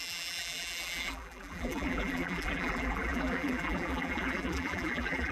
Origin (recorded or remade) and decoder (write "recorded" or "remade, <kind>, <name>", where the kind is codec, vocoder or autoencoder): remade, vocoder, BigVGAN v2